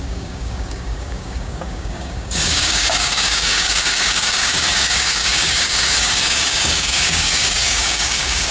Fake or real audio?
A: fake